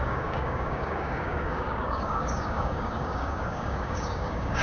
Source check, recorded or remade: remade